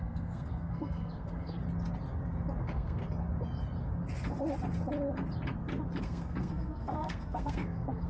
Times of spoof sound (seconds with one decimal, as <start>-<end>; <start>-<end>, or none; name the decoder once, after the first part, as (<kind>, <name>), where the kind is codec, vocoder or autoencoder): 0.0-1.6 (codec, SNAC); 2.6-3.0; 6.0-8.1